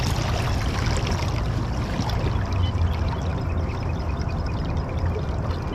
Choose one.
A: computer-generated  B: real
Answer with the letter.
B